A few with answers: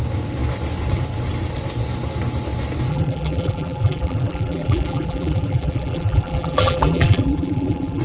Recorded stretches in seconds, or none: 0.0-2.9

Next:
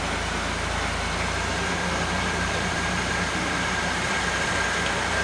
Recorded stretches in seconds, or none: 0.0-1.5; 4.6-5.2

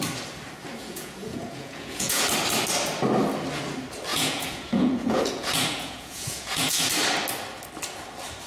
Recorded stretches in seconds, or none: 0.0-0.8; 2.2-4.1; 6.9-8.5

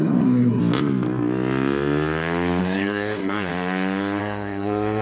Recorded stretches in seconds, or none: 0.6-2.6; 3.5-4.2

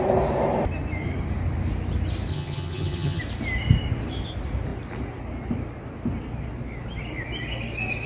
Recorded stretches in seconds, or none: 0.0-2.3; 3.2-8.1